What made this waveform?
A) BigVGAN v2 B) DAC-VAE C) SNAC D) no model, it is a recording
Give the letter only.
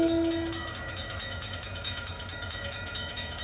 B